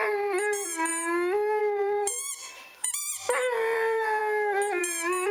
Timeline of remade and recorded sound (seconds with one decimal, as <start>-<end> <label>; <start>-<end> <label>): 0.0-0.9 remade; 0.9-1.6 recorded; 1.6-4.2 remade; 4.2-4.8 recorded; 4.8-5.3 remade